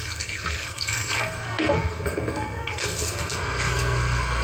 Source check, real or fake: fake